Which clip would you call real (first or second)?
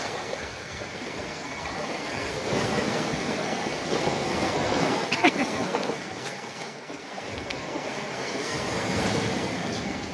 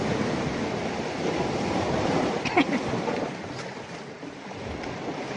second